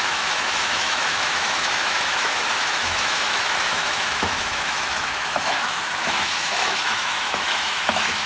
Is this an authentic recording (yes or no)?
no